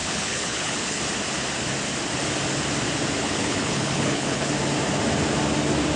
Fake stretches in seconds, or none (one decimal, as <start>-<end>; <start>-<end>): 0.0-1.0; 3.2-4.5